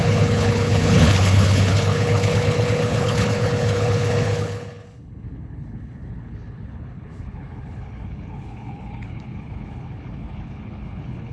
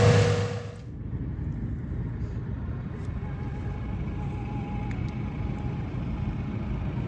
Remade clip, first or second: first